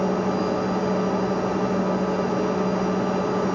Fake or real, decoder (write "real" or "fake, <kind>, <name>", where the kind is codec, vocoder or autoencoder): real